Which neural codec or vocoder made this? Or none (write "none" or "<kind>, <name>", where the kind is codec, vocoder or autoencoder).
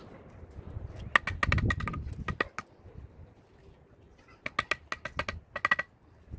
none